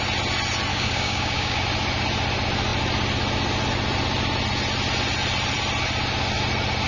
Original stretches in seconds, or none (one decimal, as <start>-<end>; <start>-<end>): 0.0-0.7; 1.6-6.9